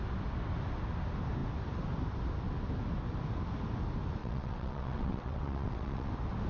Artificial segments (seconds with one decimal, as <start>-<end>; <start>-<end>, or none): 4.2-6.1